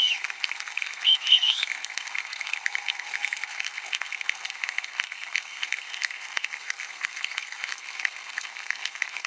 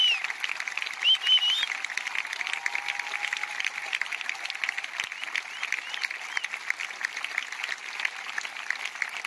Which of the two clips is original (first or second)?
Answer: second